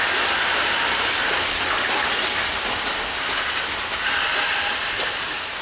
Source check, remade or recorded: recorded